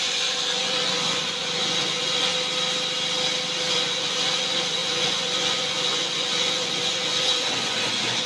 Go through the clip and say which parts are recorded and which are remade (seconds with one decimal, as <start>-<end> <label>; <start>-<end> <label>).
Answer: 0.0-2.3 remade; 2.3-3.7 recorded; 3.7-8.3 remade